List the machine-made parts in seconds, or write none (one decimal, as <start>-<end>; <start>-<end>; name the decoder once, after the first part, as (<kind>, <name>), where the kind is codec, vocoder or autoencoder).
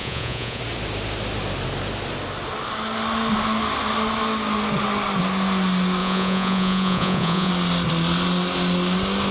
0.0-0.6 (vocoder, Vocos); 6.0-7.5